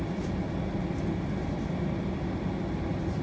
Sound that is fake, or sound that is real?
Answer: real